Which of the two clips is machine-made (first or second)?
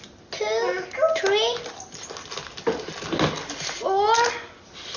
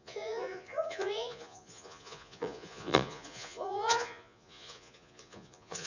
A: second